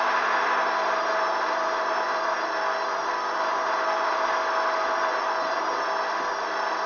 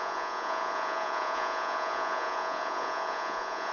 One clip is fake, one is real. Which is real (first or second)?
first